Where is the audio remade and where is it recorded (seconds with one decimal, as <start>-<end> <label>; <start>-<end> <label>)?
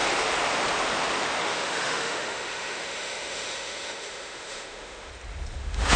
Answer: 0.0-1.4 recorded; 1.4-5.1 remade; 5.1-5.6 recorded; 5.6-6.0 remade